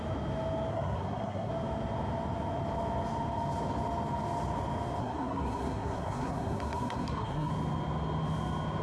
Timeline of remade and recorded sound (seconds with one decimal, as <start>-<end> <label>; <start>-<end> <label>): 0.0-0.7 recorded; 0.7-1.5 remade; 1.5-5.0 recorded; 5.0-7.5 remade; 7.5-8.8 recorded